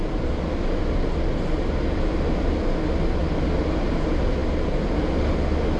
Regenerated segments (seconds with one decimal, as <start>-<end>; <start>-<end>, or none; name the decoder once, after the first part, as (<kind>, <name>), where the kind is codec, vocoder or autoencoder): none